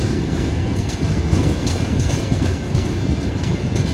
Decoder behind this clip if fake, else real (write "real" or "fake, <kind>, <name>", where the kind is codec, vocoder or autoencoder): fake, codec, SNAC